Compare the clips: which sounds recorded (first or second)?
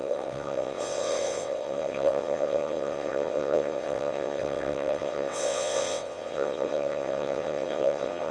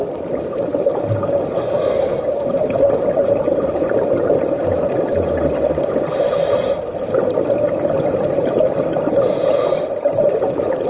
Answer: second